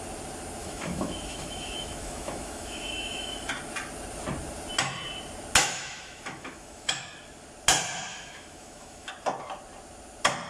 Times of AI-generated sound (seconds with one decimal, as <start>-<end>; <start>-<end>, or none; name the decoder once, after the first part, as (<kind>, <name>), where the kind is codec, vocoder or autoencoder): 0.6-3.5 (autoencoder, DAC-VAE); 5.6-7.0; 8.1-9.1